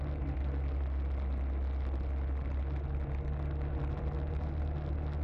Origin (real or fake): real